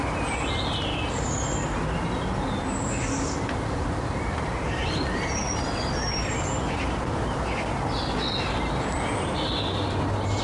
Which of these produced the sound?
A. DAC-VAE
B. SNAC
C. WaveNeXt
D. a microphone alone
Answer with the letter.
D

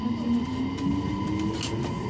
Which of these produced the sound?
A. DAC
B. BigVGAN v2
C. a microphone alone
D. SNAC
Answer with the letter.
C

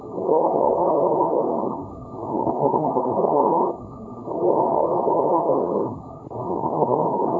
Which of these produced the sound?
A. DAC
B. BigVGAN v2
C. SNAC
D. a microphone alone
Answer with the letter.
C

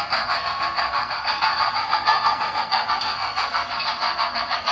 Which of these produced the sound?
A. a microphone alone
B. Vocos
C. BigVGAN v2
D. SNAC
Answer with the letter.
D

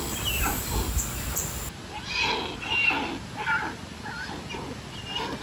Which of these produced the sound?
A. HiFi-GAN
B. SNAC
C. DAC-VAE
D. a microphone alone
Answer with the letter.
D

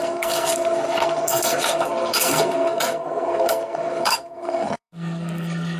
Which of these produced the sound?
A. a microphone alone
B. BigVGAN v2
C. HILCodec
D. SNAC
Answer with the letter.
D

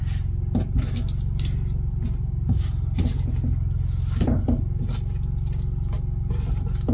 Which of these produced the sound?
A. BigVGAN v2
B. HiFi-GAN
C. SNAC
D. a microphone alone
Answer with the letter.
D